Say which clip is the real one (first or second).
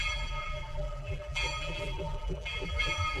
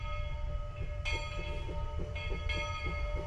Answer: second